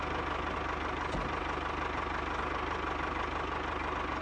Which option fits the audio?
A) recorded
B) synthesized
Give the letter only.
A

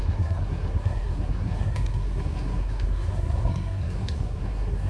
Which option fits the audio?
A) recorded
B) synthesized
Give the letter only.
B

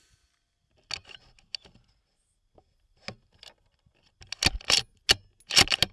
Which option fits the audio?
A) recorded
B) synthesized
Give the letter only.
A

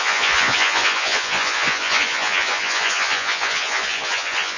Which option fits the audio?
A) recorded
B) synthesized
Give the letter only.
B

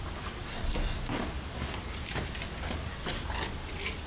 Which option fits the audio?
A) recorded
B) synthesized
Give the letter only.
A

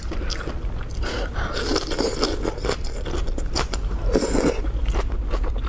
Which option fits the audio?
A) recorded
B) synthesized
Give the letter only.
A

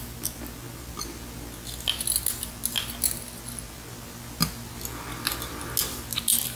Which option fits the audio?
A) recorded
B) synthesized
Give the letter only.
A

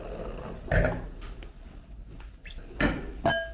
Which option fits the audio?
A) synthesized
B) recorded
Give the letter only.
B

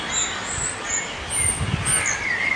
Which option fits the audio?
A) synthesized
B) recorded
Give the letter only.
B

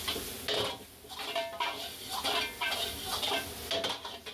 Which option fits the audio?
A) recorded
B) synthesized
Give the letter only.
A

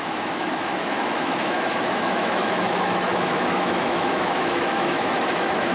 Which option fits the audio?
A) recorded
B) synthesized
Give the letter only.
B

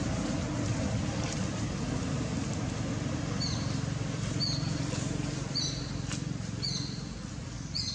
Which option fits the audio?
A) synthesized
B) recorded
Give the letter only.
B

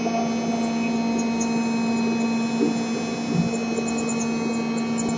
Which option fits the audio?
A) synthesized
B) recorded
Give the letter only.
B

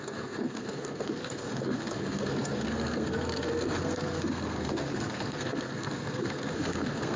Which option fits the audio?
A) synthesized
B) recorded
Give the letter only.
A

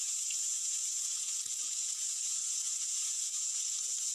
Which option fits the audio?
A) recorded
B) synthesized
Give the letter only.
B